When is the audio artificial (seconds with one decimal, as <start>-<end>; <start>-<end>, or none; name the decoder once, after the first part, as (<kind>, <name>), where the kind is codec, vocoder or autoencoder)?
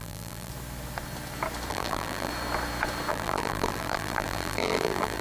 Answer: 0.0-0.5 (vocoder, BigVGAN v2); 1.7-2.3; 3.1-5.2